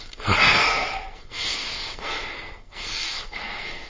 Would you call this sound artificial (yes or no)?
yes